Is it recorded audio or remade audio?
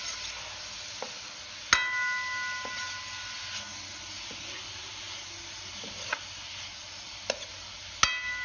recorded